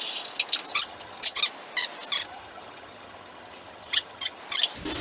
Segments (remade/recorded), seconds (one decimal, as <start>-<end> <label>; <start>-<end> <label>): 0.0-0.7 recorded; 0.7-1.4 remade; 1.4-2.2 recorded; 2.2-4.4 remade; 4.4-5.0 recorded